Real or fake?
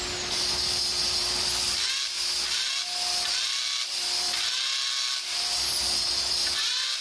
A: real